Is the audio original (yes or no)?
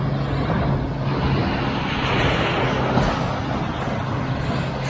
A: yes